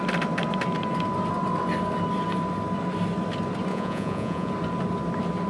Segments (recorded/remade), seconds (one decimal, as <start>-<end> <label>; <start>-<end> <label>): 0.0-3.7 recorded; 3.7-4.5 remade; 4.5-5.5 recorded